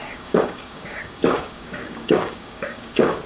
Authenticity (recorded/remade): remade